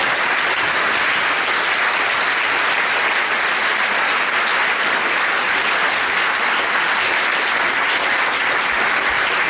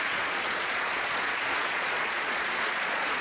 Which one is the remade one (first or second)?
second